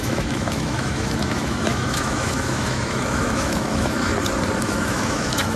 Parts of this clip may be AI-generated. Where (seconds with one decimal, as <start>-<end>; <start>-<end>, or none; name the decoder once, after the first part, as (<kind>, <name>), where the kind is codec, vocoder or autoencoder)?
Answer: 0.0-4.1 (autoencoder, DAC-VAE); 4.6-5.6